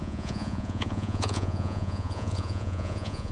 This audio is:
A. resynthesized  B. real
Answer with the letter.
A